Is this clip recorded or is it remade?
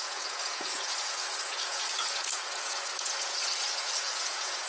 remade